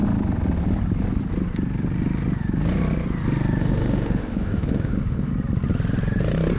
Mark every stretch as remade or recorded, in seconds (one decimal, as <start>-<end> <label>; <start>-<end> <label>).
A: 0.0-3.6 recorded; 3.6-5.3 remade; 5.3-6.6 recorded